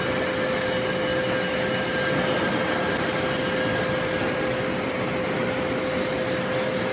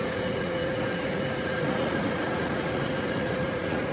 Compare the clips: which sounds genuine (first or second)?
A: first